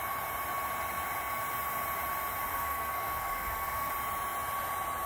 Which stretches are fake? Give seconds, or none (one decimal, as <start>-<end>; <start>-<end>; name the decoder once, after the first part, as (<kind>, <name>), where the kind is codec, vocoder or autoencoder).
2.5-3.9 (codec, SNAC)